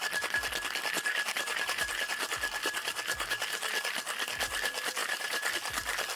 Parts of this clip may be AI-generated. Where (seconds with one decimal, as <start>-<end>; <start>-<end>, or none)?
1.3-1.9; 5.0-5.5